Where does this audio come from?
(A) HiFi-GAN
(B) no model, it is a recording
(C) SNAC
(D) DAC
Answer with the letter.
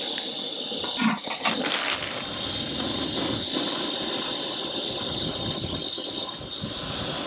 B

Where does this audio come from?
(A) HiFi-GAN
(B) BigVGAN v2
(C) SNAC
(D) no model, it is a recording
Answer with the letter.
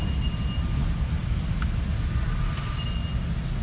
D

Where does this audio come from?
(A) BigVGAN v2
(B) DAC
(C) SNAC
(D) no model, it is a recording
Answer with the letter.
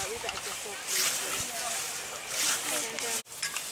D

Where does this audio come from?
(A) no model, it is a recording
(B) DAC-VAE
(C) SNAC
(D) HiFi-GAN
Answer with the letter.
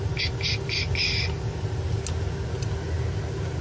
A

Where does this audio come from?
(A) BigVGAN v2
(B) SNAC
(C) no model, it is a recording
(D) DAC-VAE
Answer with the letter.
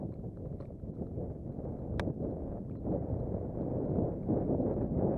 C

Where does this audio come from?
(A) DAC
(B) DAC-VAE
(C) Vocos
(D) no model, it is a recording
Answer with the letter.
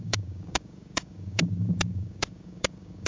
A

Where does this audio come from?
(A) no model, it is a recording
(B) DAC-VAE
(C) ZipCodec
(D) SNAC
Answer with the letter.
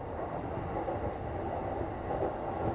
A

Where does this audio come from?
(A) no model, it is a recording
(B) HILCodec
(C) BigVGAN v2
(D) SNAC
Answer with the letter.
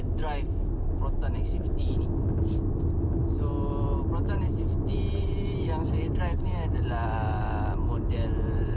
A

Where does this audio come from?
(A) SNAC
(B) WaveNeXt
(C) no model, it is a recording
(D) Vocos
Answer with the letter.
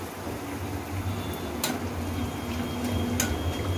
C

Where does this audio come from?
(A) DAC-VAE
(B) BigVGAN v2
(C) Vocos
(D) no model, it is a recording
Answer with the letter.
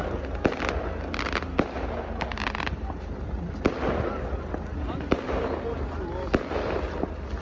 D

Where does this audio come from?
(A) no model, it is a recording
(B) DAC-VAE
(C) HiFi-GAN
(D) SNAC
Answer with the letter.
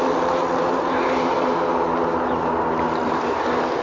A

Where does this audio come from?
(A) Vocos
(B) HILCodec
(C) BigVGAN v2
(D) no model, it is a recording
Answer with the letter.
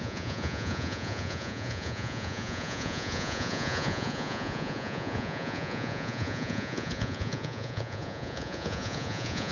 A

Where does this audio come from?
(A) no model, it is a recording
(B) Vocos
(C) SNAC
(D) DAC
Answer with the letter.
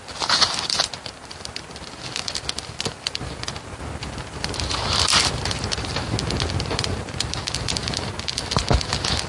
A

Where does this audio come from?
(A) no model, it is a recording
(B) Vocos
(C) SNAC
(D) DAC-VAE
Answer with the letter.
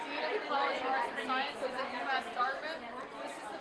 A